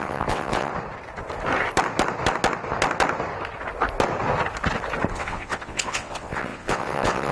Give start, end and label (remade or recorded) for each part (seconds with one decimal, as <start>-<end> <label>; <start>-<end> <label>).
0.0-0.7 remade; 0.7-5.1 recorded; 5.1-7.3 remade